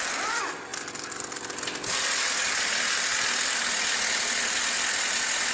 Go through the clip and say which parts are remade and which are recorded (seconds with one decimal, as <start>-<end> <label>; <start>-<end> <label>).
0.0-5.5 recorded